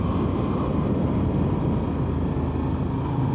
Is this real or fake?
real